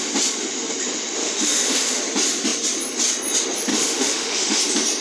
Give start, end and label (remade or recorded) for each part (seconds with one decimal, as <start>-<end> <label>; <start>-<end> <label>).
0.0-1.2 recorded; 1.2-2.0 remade; 2.0-3.7 recorded; 3.7-4.6 remade; 4.6-5.0 recorded